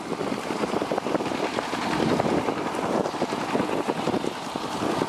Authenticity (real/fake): real